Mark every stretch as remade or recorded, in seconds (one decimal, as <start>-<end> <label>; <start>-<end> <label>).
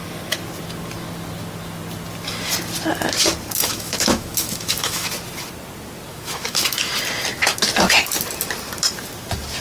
0.0-3.6 recorded; 3.6-5.1 remade; 5.1-6.1 recorded; 6.1-6.9 remade; 6.9-9.6 recorded